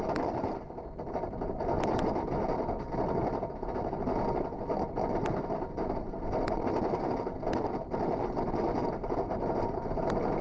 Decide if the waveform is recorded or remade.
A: recorded